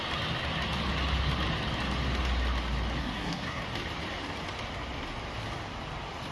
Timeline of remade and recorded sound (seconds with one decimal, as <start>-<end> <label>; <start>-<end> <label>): 0.0-3.0 recorded; 3.0-3.6 remade; 3.6-6.3 recorded